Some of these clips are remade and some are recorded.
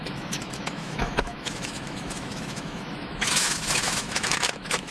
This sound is remade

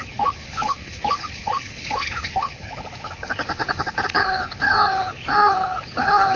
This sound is remade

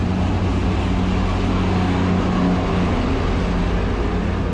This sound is recorded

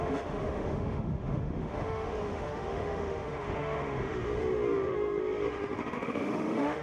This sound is remade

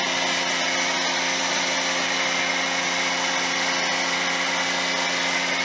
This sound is recorded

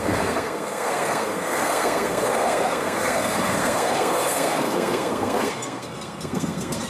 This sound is remade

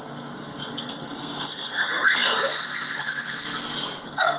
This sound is remade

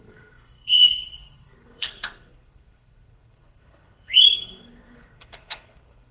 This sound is remade